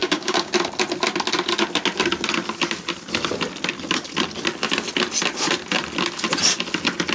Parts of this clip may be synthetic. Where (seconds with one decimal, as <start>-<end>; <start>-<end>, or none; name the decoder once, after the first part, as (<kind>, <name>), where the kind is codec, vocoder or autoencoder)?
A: 0.0-0.5 (codec, DAC)

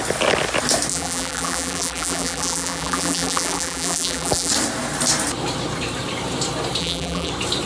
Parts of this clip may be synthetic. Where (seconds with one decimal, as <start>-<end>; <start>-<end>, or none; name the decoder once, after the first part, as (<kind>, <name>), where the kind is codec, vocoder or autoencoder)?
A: 0.9-4.5 (vocoder, BigVGAN v2); 6.8-7.3

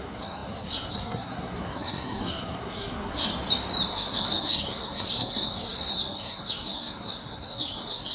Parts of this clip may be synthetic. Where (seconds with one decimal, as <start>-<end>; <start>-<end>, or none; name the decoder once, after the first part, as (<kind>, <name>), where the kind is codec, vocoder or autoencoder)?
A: 0.0-3.3 (codec, SNAC); 3.9-8.1